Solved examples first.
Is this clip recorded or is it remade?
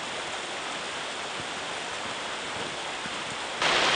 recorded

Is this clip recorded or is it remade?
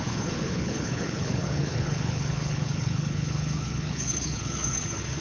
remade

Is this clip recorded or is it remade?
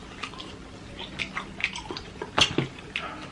recorded